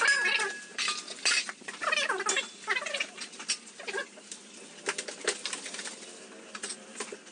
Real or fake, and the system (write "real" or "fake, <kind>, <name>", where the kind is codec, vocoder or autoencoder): real